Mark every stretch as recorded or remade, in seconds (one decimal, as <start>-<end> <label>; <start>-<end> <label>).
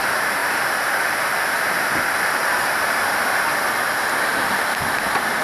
0.0-2.4 recorded; 2.4-3.0 remade; 3.0-4.3 recorded; 4.3-5.4 remade